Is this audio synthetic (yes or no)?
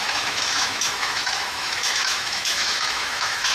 yes